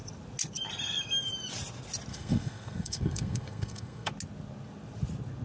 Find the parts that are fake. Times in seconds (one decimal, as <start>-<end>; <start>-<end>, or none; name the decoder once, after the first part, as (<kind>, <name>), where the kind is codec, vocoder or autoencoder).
2.1-4.1 (codec, SNAC)